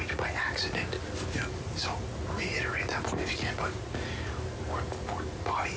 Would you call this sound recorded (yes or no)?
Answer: yes